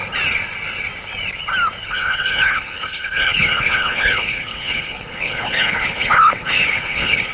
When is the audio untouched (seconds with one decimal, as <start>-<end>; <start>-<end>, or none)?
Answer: 0.0-1.9

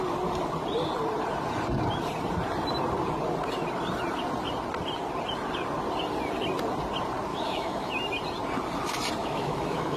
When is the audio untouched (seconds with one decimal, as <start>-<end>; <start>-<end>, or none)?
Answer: 0.0-7.3; 7.9-9.2

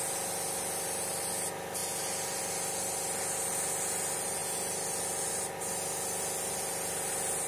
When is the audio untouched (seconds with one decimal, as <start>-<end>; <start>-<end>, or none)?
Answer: 0.0-7.5

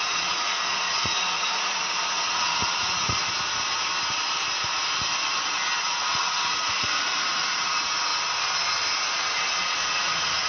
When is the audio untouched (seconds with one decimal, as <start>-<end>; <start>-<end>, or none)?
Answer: 3.2-5.8; 8.1-9.9

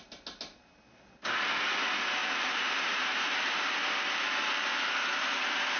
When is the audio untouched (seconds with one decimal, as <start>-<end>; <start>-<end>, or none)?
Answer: 0.0-2.2

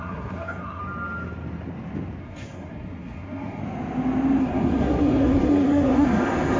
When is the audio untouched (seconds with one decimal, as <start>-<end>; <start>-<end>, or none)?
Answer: 0.8-2.2; 3.6-4.4

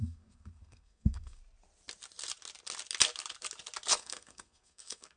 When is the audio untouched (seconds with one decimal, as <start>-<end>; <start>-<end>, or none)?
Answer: 1.4-3.9